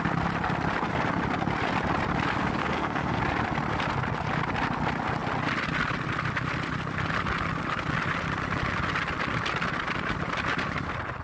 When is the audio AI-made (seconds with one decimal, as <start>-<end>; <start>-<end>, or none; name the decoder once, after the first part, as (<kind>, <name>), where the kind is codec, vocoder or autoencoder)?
2.6-3.2 (codec, SNAC)